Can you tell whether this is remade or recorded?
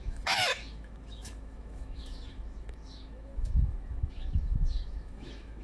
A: remade